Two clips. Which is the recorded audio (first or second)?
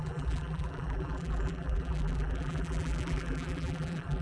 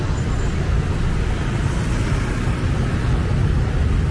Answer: second